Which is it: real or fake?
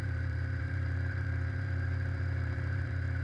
fake